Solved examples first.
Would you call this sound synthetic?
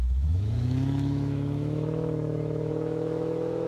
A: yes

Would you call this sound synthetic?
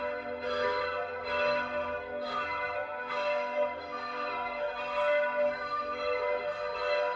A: yes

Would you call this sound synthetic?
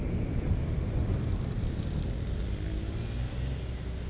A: no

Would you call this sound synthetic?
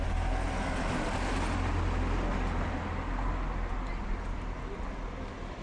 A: no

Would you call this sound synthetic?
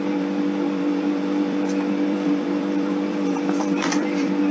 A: yes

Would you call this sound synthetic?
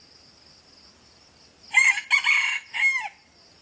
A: no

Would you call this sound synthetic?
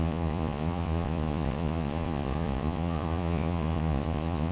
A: yes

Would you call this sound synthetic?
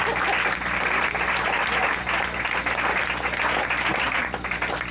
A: no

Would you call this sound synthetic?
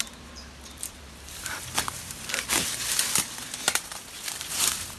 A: yes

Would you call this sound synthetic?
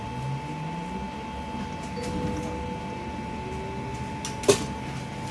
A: no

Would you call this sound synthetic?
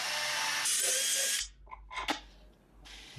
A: no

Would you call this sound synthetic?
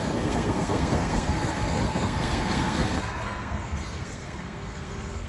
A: yes